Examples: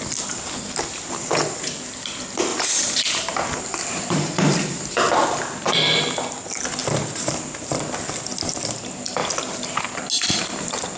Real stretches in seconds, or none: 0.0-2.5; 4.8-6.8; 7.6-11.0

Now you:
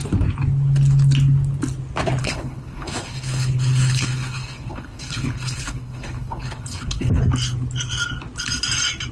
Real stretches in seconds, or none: 0.0-2.2; 7.2-9.1

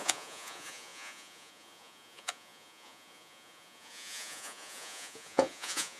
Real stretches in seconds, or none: none

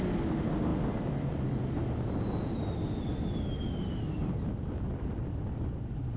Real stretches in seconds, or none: 0.0-0.7; 1.4-2.4

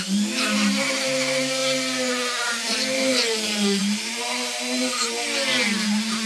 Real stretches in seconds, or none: 0.0-6.3